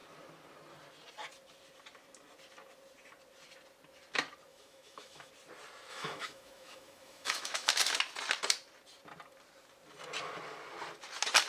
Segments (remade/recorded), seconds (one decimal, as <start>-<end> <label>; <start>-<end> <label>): 0.0-4.5 recorded; 4.5-5.3 remade; 5.3-5.9 recorded; 5.9-7.7 remade; 7.7-11.5 recorded